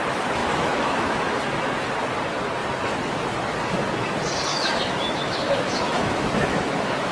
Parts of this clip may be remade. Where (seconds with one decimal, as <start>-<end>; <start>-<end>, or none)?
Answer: 0.4-1.4; 4.5-7.1